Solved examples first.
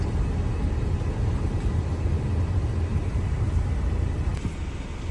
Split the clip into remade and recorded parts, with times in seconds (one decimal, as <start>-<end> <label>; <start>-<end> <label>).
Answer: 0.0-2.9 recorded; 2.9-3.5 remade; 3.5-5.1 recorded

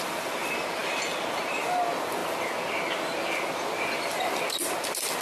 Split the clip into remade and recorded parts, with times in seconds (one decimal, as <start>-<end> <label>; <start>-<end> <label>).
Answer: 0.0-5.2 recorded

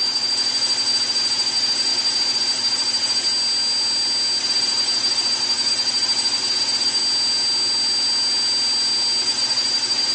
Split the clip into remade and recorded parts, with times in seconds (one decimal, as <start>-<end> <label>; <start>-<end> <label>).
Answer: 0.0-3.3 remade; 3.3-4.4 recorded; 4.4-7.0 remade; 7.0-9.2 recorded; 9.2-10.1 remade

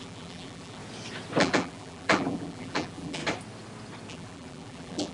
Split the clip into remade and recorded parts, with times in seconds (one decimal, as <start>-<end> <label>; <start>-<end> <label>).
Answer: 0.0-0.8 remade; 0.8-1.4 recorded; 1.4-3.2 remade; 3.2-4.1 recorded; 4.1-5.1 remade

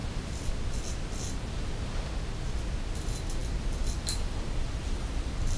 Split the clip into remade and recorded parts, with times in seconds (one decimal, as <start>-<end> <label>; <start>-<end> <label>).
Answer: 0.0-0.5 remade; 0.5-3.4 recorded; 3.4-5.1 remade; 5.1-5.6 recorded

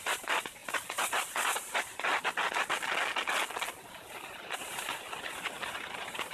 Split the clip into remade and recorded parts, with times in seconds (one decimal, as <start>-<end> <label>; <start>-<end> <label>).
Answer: 0.0-0.6 remade; 0.6-3.9 recorded; 3.9-6.3 remade

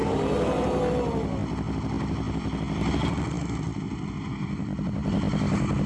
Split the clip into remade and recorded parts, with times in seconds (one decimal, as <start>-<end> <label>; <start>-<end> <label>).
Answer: 0.0-5.9 recorded

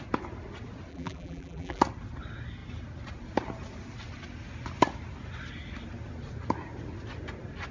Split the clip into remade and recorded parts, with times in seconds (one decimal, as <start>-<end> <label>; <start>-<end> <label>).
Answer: 0.0-0.9 recorded; 0.9-1.8 remade; 1.8-7.7 recorded